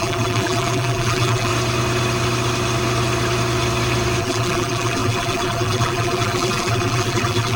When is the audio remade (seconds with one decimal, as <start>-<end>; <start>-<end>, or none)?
0.0-1.5; 4.2-7.6